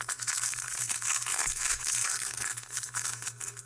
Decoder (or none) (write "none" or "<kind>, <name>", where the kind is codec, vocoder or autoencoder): codec, SNAC